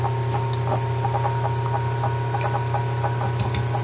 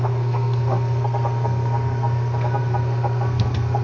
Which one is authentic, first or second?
first